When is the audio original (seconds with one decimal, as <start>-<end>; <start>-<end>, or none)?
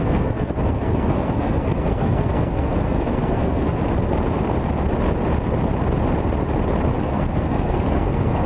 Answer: 3.8-7.0